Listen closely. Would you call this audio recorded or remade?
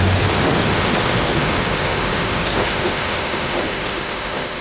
remade